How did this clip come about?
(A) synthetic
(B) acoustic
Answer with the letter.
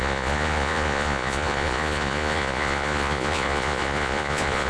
A